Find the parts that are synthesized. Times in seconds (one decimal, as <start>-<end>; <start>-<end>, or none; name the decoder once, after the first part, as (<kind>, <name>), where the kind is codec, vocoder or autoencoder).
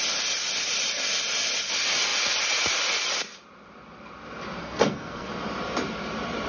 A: 4.6-5.3 (codec, SNAC)